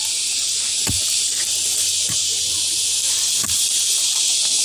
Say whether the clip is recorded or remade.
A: recorded